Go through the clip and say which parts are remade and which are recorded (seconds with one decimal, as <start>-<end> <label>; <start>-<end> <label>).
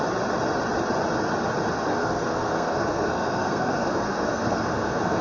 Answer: 0.0-1.9 recorded; 1.9-5.2 remade